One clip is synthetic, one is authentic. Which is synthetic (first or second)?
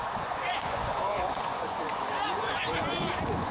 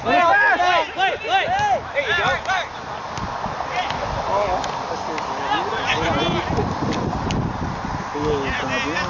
first